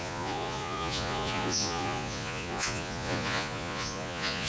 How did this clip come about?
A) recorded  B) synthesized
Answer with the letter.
B